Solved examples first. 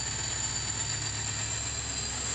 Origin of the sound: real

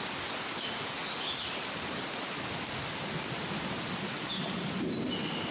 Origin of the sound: real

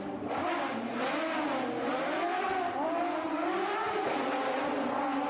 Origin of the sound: real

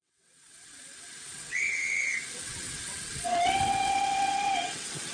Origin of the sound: fake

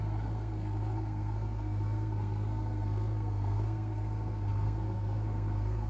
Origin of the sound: fake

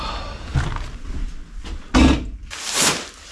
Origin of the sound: real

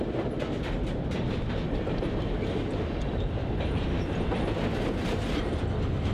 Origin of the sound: real